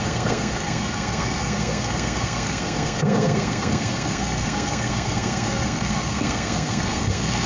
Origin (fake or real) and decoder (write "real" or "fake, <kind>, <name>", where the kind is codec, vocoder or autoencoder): fake, codec, SNAC